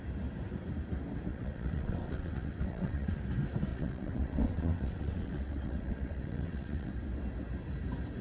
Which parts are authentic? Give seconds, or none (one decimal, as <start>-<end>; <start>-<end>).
0.0-1.3; 3.2-3.7; 6.9-8.2